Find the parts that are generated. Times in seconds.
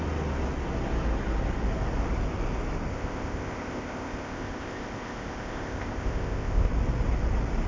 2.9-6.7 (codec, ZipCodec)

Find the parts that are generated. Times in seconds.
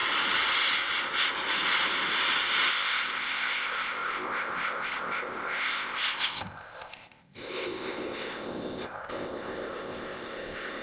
2.7-10.8 (codec, ZipCodec)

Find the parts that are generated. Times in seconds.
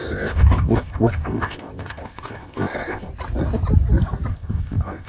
0.0-3.1 (codec, ZipCodec); 4.3-5.1